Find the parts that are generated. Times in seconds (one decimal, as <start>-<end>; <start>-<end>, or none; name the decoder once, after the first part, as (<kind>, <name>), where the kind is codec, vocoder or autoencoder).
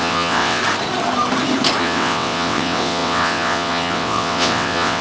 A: 0.0-0.6 (vocoder, WaveNeXt); 1.8-5.0